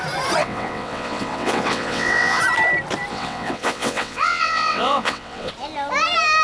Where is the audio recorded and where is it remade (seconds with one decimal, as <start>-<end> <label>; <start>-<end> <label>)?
0.0-0.4 recorded; 0.4-2.4 remade; 2.4-3.1 recorded; 3.1-5.5 remade; 5.5-6.4 recorded